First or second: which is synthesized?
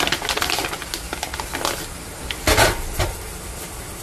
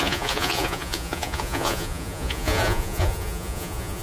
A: second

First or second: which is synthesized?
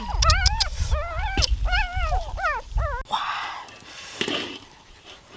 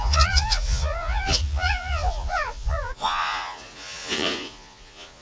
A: second